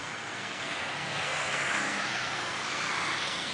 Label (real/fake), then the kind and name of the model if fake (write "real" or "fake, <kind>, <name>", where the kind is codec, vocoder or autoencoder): fake, codec, SNAC